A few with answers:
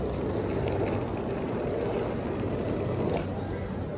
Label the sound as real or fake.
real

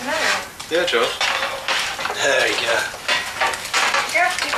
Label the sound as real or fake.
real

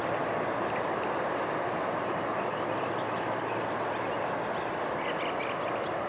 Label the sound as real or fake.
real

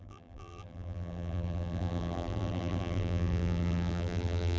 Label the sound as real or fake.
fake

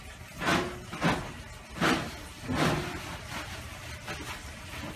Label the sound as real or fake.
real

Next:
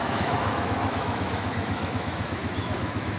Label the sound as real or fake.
fake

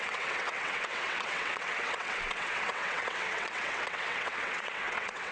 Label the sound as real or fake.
fake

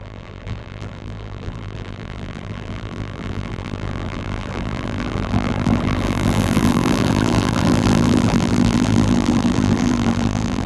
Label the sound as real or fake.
fake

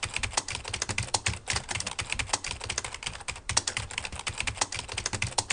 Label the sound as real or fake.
fake